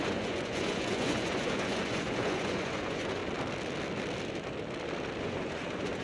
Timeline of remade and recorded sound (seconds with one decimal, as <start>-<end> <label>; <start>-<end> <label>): 0.0-3.2 remade; 3.2-5.2 recorded; 5.2-6.0 remade